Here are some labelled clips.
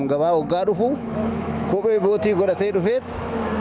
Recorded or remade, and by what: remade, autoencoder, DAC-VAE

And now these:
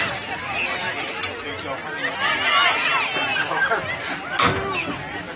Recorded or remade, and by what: recorded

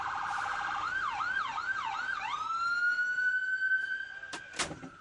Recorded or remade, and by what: recorded